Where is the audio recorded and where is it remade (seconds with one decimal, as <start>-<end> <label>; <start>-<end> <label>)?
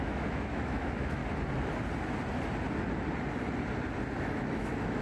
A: 0.0-1.2 remade; 1.2-4.2 recorded; 4.2-5.0 remade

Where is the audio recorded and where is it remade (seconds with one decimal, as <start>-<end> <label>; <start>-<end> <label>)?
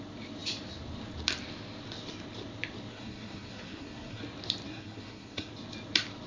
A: 0.0-2.9 recorded; 2.9-4.2 remade; 4.2-4.7 recorded; 4.7-5.5 remade; 5.5-6.3 recorded